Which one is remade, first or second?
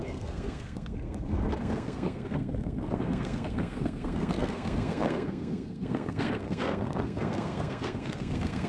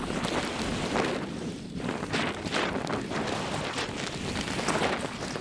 first